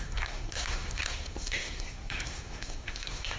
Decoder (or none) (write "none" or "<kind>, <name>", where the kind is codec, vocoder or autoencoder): codec, SNAC